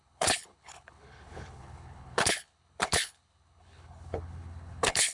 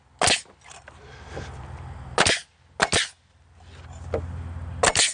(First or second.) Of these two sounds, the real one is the second